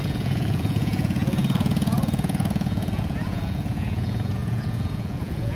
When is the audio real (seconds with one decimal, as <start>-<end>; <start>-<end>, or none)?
none